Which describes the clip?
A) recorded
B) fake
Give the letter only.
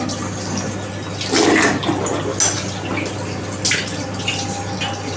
A